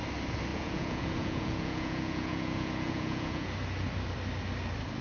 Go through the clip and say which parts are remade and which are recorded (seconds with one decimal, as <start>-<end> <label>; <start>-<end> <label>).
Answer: 0.0-0.5 recorded; 0.5-3.5 remade; 3.5-5.0 recorded